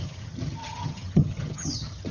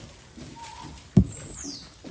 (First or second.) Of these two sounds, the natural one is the second